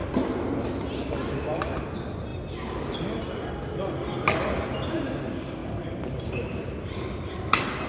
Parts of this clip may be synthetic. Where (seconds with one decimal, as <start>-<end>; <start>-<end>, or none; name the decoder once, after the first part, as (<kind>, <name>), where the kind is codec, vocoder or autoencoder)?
2.3-3.0 (vocoder, BigVGAN v2); 5.6-6.5